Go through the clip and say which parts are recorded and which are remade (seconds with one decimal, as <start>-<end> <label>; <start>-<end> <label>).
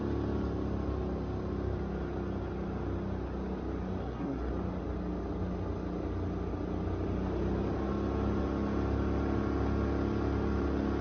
0.0-4.0 recorded; 4.0-4.5 remade; 4.5-11.0 recorded